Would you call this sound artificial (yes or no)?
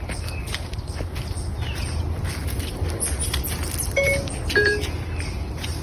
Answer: no